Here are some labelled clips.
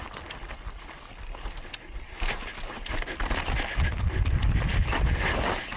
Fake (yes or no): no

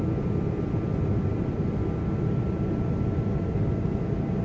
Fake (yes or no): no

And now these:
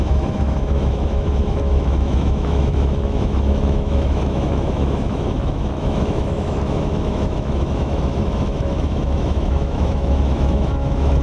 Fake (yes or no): yes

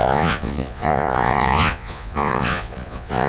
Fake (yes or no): yes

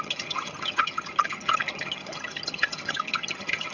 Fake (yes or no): yes